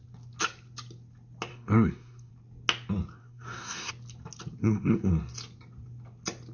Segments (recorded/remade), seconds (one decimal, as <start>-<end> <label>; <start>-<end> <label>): 0.0-1.5 recorded; 1.5-2.3 remade; 2.3-3.2 recorded; 3.2-3.9 remade; 3.9-4.6 recorded; 4.6-5.1 remade; 5.1-6.5 recorded